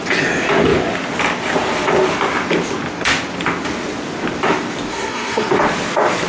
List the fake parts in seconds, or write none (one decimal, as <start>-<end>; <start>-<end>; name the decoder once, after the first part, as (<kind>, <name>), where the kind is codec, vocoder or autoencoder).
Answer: 4.9-5.5 (codec, SNAC)